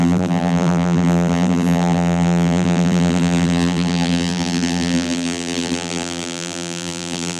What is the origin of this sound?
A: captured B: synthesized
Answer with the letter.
B